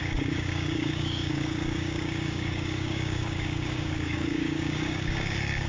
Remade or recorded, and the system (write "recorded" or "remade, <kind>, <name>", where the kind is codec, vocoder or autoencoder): remade, codec, DAC